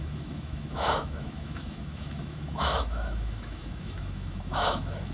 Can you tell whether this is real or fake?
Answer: fake